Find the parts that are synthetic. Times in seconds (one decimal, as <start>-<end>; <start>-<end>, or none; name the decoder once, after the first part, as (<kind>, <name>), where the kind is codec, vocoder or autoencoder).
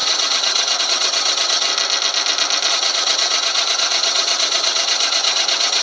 0.0-1.7 (vocoder, HiFi-GAN); 2.7-5.8